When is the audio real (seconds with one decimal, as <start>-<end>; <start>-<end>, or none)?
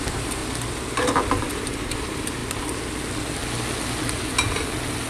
0.4-1.4; 2.4-5.1